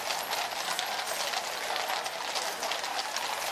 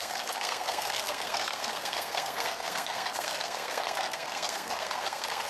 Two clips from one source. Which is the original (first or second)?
first